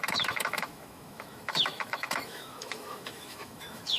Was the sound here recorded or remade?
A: remade